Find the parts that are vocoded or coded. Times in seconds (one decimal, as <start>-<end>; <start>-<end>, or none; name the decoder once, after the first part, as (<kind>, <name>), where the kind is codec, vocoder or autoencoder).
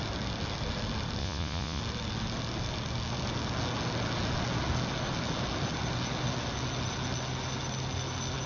1.2-1.8 (vocoder, Vocos)